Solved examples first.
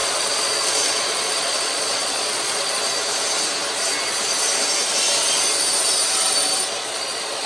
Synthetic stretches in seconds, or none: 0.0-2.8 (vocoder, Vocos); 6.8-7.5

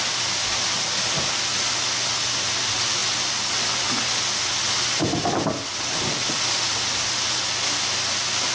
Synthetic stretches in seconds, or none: none

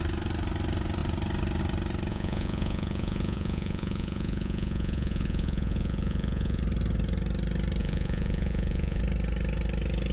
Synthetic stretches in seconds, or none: 2.1-6.6 (vocoder, Vocos); 7.8-9.0

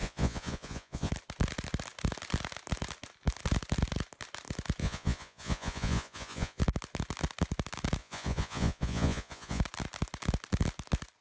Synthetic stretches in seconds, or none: 0.0-1.1 (vocoder, Vocos); 4.8-6.6; 8.0-9.6

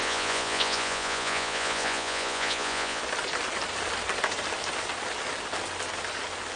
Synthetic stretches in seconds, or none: 0.0-3.0 (vocoder, Vocos)

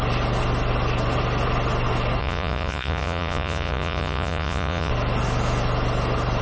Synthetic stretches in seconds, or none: 2.2-4.9 (vocoder, Vocos)